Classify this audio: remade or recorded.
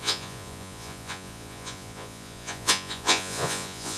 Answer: remade